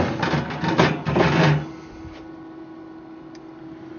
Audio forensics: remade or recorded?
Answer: recorded